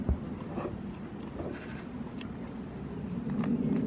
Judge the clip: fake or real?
real